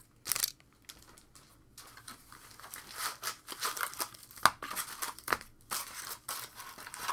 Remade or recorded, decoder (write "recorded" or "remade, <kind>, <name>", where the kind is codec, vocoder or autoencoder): recorded